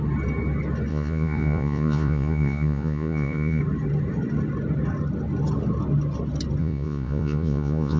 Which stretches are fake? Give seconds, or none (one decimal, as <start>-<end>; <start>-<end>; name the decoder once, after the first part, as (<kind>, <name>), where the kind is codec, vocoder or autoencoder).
0.9-3.6 (vocoder, Vocos); 6.6-8.0

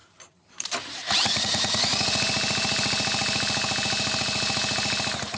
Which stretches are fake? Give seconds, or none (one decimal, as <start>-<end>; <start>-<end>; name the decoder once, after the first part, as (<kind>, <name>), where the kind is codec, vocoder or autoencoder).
0.0-1.9 (vocoder, BigVGAN v2)